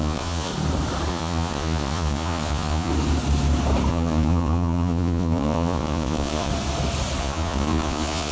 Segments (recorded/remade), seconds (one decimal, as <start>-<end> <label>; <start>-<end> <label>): 0.0-0.5 remade; 0.5-1.1 recorded; 1.1-2.9 remade; 2.9-3.9 recorded; 3.9-6.5 remade; 6.5-7.2 recorded; 7.2-8.3 remade